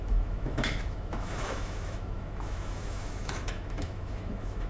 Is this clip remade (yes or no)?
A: yes